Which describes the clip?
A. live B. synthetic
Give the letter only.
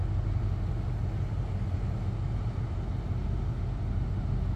A